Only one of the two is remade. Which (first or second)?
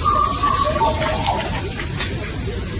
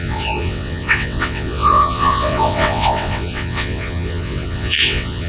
second